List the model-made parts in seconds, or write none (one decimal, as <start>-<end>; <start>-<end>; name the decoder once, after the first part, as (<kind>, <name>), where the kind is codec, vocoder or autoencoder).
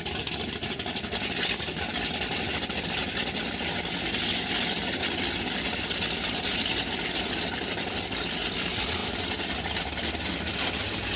none